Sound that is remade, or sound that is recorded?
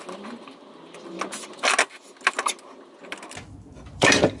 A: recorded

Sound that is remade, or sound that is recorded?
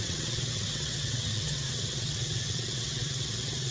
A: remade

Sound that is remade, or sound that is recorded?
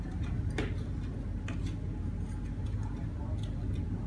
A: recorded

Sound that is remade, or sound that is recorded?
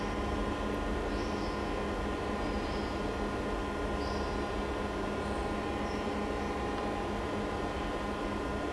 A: recorded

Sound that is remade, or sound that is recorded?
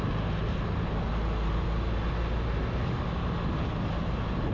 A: recorded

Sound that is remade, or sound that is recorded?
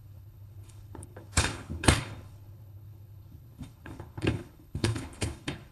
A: remade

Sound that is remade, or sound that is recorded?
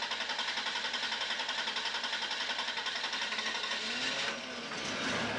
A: recorded